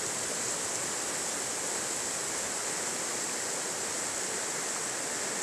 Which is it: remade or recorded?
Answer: recorded